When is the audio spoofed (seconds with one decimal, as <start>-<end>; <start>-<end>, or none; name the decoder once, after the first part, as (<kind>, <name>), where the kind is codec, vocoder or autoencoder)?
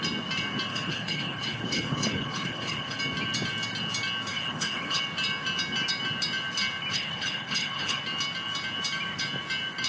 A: 0.7-3.0 (codec, HILCodec); 4.3-5.0; 6.9-8.0